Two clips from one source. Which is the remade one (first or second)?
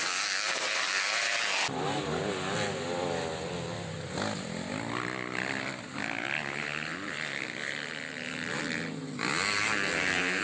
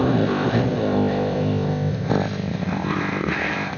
second